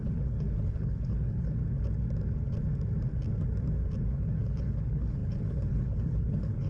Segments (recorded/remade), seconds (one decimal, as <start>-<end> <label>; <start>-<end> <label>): 0.0-1.6 remade; 1.6-4.1 recorded; 4.1-6.7 remade